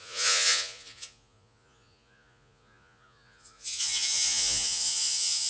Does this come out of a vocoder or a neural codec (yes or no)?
yes